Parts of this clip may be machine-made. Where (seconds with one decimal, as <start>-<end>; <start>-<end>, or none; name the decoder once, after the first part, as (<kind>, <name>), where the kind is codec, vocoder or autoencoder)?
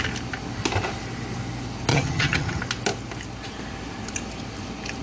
1.9-2.6 (vocoder, HiFi-GAN)